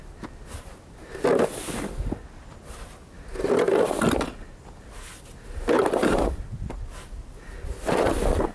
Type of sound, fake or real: real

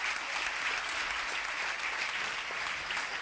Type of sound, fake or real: real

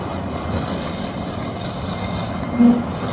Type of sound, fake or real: real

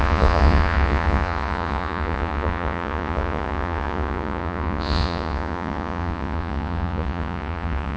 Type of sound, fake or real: fake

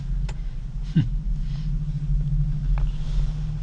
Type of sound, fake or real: real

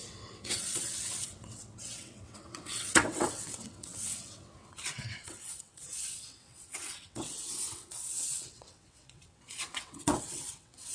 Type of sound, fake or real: fake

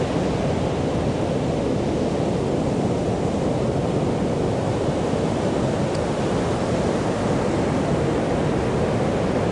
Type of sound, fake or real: real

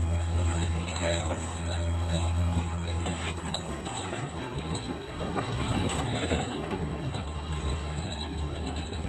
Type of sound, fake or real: fake